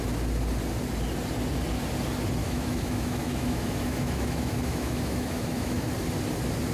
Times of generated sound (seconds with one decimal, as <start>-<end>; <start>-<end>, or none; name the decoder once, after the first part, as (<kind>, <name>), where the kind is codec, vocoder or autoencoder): 2.4-5.9 (autoencoder, DAC-VAE)